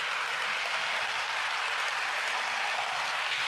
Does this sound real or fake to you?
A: real